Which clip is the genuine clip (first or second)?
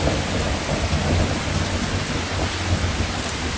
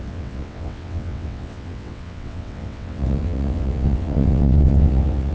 first